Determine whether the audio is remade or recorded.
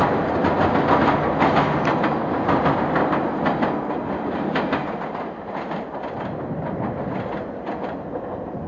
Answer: recorded